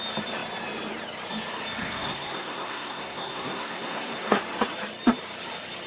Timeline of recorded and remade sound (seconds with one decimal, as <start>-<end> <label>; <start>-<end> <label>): 0.0-1.8 recorded; 1.8-4.4 remade; 4.4-5.9 recorded